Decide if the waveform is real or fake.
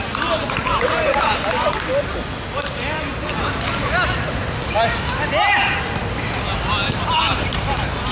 real